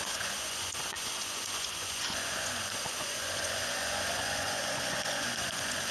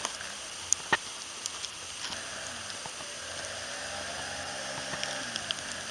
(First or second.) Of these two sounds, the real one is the second